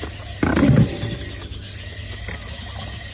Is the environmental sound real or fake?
real